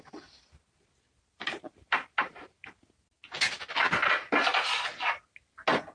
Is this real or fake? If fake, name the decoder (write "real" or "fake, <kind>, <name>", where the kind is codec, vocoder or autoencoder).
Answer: real